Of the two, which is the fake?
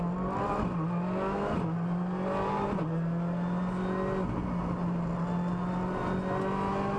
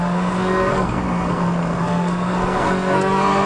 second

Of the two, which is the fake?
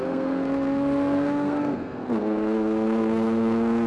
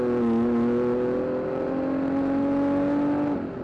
first